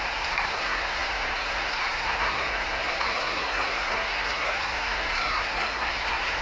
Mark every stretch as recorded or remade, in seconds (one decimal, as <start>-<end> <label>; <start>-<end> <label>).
0.0-6.4 remade

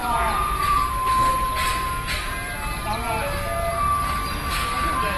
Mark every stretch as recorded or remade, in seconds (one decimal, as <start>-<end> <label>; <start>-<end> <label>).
0.0-0.8 remade; 0.8-5.2 recorded

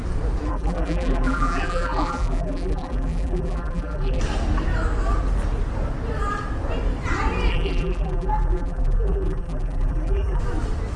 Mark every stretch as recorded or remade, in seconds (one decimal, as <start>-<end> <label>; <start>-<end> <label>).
0.0-0.5 recorded; 0.5-4.2 remade; 4.2-7.5 recorded; 7.5-10.4 remade; 10.4-11.0 recorded

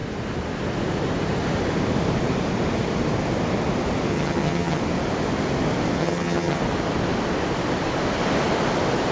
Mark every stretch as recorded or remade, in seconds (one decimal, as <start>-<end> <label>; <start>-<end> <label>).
0.0-4.1 recorded; 4.1-4.8 remade; 4.8-6.0 recorded; 6.0-6.6 remade; 6.6-9.1 recorded

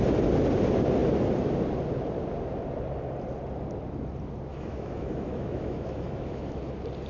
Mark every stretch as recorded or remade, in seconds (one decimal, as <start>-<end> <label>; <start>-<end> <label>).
0.0-4.5 recorded; 4.5-6.6 remade; 6.6-7.1 recorded

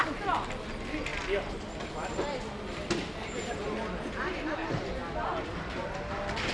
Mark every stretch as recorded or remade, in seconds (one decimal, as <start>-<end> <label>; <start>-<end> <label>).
0.0-6.5 recorded

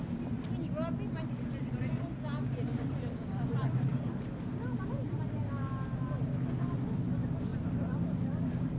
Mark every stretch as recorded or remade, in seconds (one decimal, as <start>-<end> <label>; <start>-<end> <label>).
0.0-8.8 recorded

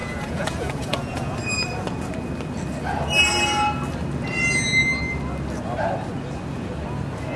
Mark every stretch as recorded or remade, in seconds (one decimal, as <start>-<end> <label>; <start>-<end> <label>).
0.0-1.3 remade; 1.3-7.4 recorded